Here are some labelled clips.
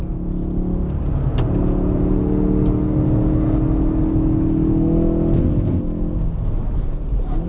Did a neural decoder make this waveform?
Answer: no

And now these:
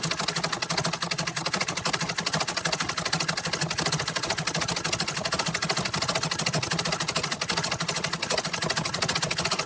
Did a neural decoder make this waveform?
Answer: no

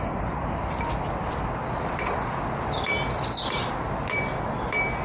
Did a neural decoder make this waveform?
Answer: no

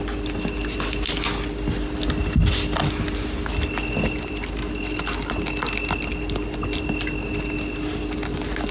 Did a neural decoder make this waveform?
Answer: no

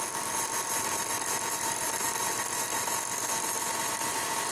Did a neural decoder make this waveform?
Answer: yes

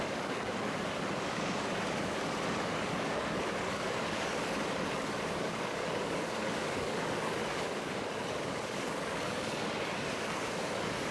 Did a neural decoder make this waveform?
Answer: yes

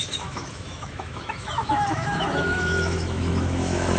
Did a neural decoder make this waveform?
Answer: yes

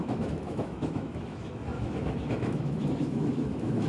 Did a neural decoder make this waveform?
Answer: yes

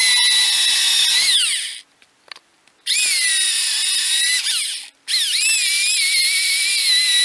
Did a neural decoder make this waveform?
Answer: no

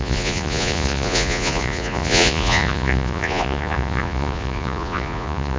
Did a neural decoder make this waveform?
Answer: yes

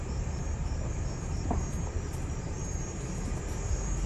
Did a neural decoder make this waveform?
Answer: yes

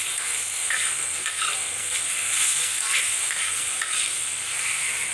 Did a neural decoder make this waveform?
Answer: yes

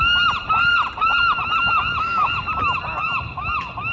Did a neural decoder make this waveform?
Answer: no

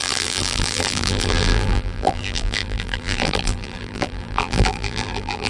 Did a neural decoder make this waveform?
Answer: yes